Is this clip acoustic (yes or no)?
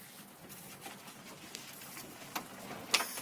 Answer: yes